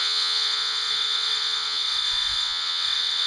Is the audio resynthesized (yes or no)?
yes